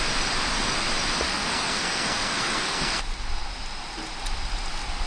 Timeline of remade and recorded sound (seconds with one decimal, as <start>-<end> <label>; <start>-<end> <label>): 0.0-1.3 recorded; 1.3-3.0 remade; 3.0-5.1 recorded